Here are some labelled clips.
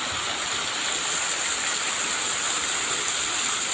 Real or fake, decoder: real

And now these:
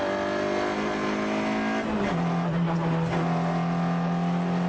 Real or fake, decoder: real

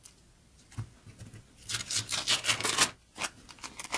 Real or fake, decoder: real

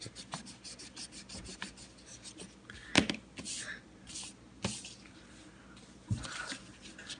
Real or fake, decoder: real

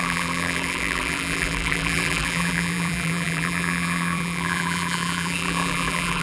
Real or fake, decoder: fake, vocoder, BigVGAN v2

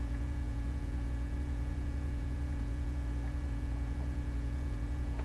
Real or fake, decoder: fake, vocoder, Vocos